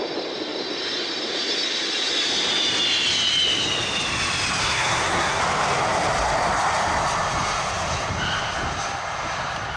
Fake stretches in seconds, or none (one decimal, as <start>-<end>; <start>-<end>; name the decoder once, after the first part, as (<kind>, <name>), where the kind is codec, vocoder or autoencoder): 4.6-5.4 (codec, SNAC)